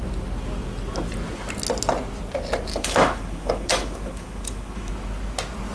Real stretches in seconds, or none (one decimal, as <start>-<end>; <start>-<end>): 0.0-2.7; 4.9-5.7